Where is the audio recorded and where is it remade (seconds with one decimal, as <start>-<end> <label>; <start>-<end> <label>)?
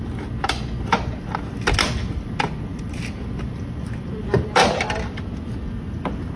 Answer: 0.0-2.7 recorded; 2.7-4.7 remade; 4.7-6.4 recorded